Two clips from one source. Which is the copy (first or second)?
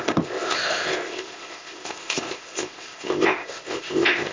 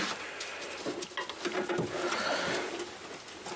first